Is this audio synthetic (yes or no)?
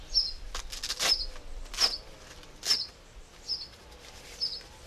no